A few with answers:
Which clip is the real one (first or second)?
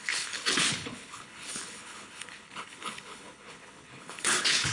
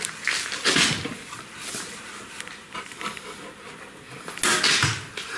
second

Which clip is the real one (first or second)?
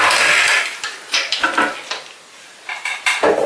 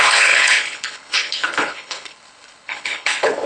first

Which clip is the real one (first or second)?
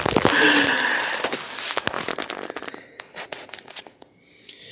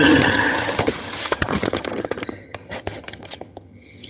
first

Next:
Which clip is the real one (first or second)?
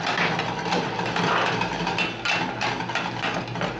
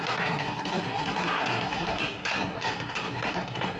first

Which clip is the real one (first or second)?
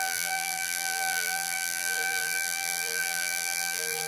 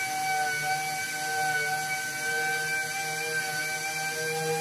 second